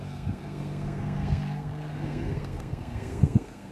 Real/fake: fake